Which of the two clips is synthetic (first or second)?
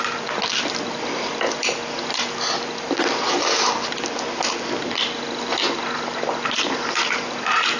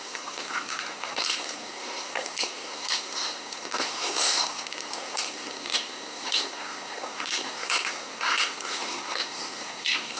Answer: second